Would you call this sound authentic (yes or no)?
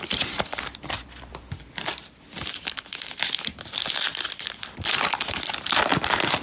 no